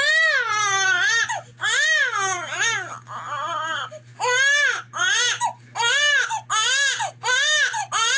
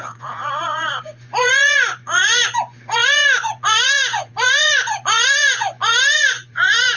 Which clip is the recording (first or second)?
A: first